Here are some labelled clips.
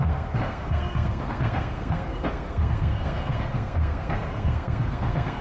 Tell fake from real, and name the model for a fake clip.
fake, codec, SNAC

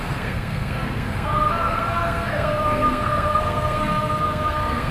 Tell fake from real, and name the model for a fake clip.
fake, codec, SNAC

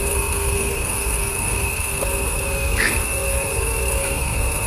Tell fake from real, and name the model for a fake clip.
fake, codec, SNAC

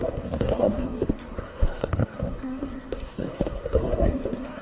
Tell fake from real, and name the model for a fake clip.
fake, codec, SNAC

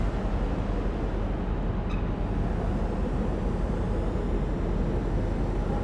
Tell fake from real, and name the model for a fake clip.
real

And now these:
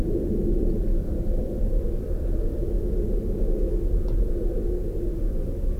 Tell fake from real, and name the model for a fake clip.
real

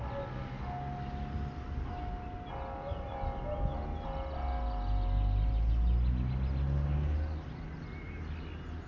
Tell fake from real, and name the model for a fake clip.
real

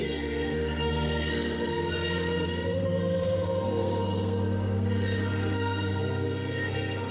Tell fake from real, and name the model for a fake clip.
fake, codec, SNAC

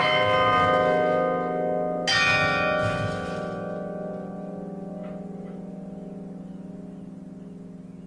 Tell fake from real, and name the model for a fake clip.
real